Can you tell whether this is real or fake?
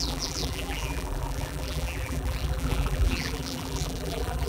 fake